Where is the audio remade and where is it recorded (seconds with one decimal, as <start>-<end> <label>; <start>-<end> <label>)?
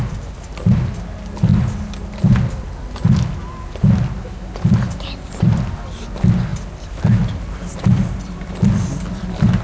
0.0-9.6 recorded